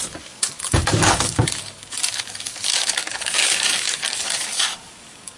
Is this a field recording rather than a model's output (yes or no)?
no